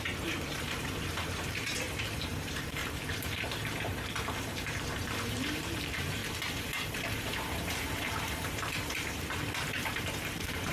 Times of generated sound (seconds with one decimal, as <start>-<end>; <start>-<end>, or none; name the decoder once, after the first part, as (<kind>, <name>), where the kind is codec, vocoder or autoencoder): 0.0-2.8 (vocoder, BigVGAN v2); 5.3-6.2; 7.5-10.7

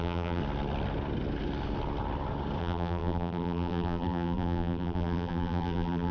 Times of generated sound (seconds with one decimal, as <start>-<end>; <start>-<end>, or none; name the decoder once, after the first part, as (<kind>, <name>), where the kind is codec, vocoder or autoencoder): 0.0-0.4 (vocoder, BigVGAN v2); 2.6-6.1

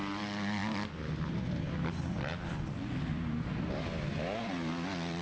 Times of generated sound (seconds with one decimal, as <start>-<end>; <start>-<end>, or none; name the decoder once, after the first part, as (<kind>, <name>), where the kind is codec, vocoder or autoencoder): none

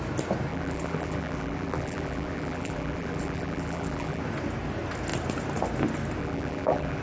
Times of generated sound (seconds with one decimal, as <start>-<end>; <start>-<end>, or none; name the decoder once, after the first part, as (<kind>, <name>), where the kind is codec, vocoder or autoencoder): 0.5-4.2 (vocoder, BigVGAN v2); 6.2-7.0

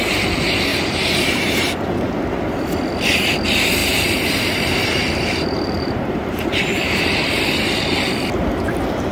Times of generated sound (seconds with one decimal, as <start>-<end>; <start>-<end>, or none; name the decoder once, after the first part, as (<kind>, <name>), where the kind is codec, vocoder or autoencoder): 0.7-1.7 (vocoder, BigVGAN v2); 3.8-7.0

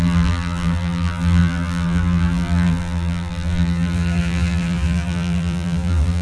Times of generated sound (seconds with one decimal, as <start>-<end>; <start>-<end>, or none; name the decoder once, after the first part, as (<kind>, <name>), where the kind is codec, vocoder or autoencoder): 0.0-6.2 (vocoder, BigVGAN v2)